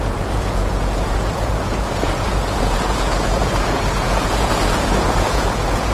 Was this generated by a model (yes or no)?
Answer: yes